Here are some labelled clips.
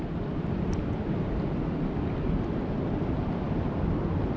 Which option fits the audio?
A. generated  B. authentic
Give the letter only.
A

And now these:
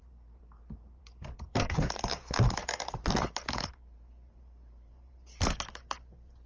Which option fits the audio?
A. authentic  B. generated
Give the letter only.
B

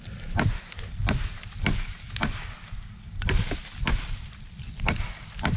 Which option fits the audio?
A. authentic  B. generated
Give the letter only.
A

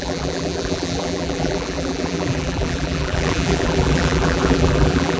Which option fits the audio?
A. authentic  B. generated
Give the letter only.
B